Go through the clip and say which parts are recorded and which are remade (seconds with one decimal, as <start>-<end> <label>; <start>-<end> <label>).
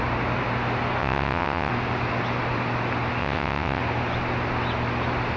0.0-1.0 recorded; 1.0-1.7 remade; 1.7-3.2 recorded; 3.2-3.8 remade; 3.8-5.4 recorded